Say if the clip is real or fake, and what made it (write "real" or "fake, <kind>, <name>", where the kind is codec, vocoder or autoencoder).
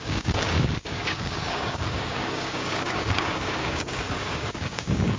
fake, codec, DAC